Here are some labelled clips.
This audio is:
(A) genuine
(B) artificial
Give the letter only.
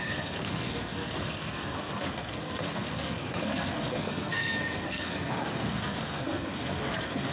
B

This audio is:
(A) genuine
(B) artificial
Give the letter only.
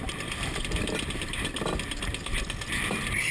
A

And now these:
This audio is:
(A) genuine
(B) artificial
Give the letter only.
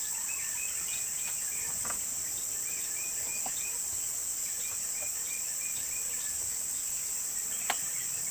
A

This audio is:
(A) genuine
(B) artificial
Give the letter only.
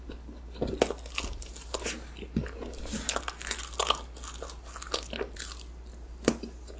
A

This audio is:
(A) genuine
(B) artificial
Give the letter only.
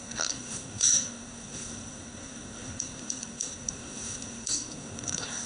B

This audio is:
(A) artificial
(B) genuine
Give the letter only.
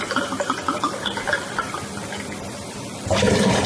B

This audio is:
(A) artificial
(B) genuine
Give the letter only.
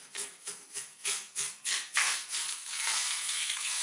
A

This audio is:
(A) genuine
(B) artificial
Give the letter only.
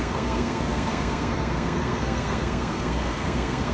B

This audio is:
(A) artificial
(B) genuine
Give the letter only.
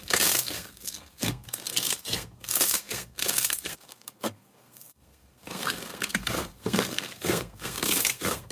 A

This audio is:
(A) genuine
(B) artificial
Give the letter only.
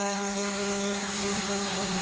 B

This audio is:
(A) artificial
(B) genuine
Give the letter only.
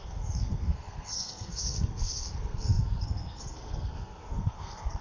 A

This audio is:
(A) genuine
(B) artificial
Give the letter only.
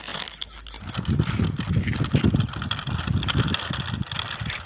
A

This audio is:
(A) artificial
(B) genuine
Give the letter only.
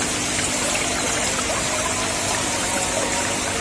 B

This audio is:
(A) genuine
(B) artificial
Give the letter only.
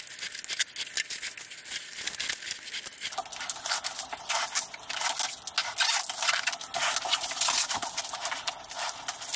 A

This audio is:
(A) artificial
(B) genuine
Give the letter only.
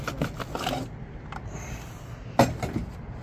B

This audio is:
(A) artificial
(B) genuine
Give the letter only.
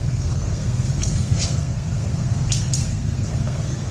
A